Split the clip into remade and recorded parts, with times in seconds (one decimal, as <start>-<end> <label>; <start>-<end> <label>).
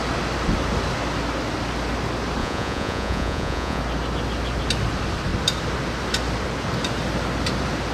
0.0-2.4 recorded; 2.4-3.8 remade; 3.8-7.9 recorded